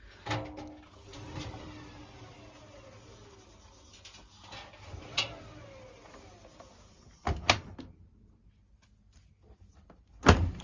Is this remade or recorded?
recorded